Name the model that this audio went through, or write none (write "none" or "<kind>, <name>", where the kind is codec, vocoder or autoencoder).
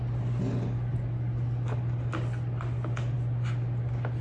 none